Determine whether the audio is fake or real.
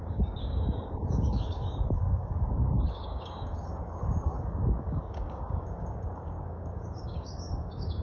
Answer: fake